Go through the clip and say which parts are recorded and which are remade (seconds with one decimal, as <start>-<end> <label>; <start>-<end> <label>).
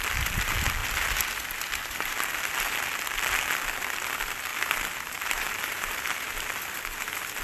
0.0-4.5 recorded; 4.5-6.0 remade; 6.0-7.4 recorded